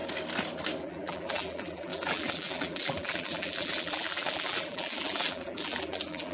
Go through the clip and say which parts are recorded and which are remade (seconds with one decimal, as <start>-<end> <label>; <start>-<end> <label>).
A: 0.0-0.8 recorded; 0.8-6.3 remade